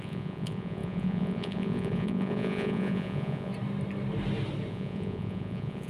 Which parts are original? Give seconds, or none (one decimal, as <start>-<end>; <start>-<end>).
3.5-4.7